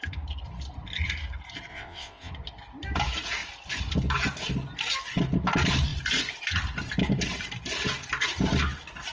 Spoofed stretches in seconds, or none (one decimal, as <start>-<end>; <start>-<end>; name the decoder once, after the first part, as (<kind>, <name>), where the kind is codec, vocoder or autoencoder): 1.7-2.3 (vocoder, WaveNeXt)